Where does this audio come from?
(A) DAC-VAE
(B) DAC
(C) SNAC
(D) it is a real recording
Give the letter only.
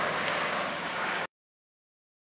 B